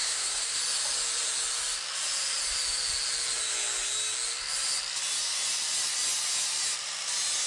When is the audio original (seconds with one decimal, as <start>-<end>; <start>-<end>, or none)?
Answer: 0.6-7.5